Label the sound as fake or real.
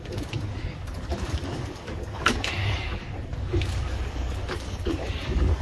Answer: fake